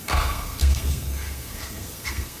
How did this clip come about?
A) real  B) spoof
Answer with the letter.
B